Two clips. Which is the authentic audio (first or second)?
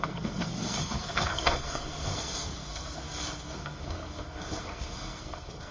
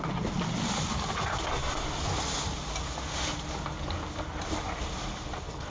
second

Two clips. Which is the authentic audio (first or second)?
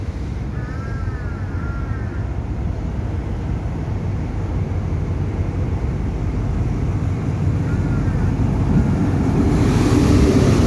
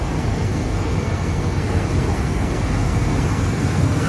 first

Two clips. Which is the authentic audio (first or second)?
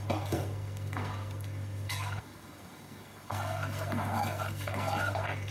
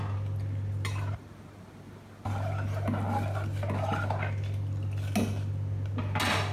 second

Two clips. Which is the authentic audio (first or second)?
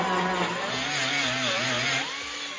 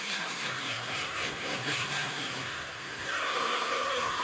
first